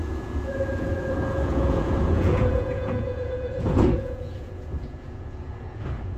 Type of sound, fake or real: fake